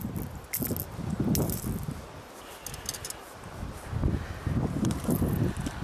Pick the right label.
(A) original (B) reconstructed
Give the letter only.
A